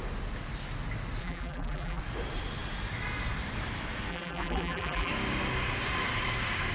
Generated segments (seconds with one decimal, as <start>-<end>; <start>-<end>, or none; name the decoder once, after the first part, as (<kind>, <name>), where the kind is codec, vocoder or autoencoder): 1.2-2.0 (vocoder, BigVGAN v2); 4.1-5.1